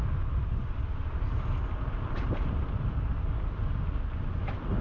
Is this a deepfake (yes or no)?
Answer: no